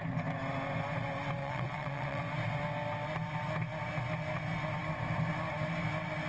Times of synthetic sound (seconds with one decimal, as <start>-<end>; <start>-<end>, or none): 1.4-2.2